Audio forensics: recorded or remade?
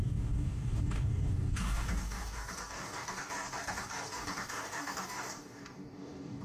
remade